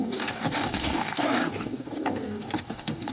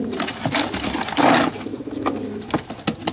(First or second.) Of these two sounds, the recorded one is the second